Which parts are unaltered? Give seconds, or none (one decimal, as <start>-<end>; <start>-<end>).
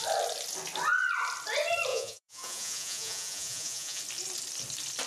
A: 0.0-1.9; 4.0-5.1